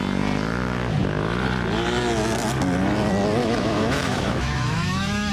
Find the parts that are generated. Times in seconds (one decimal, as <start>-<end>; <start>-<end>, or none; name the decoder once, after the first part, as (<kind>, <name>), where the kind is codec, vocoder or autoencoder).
3.4-5.3 (autoencoder, DAC-VAE)